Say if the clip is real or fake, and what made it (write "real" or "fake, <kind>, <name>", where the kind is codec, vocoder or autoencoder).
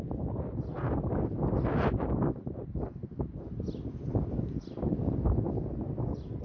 real